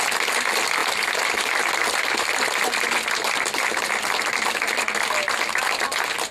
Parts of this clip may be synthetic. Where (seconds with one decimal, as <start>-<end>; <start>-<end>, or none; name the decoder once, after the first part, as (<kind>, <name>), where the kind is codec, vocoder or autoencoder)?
0.8-3.8 (vocoder, BigVGAN v2)

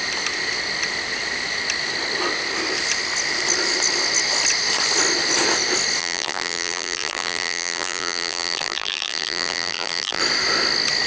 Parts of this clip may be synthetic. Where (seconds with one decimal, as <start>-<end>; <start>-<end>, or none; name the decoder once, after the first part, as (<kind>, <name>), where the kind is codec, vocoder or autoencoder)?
6.0-10.2 (vocoder, BigVGAN v2)

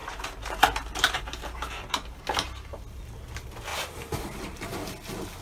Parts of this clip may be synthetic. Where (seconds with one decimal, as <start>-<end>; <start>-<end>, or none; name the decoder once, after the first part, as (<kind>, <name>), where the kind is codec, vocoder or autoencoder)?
0.0-2.2 (vocoder, BigVGAN v2); 3.7-4.4

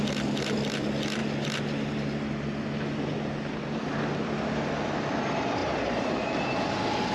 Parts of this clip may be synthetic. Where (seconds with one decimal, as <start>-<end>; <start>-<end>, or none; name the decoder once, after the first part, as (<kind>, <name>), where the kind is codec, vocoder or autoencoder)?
none